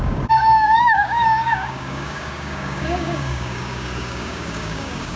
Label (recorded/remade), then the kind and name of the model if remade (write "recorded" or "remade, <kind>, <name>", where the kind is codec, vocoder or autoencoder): remade, codec, DAC